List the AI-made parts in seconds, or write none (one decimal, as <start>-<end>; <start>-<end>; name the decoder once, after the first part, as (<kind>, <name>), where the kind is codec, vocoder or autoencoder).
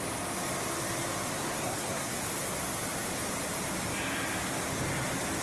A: 1.3-2.1 (codec, SNAC)